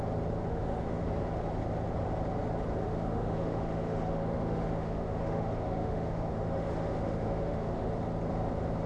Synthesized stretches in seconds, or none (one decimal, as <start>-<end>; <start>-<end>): 0.5-1.0; 2.8-7.9